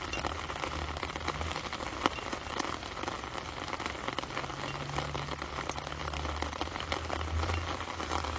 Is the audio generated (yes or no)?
no